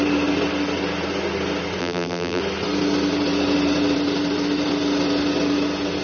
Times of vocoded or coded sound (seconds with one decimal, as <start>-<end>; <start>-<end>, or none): 1.8-2.4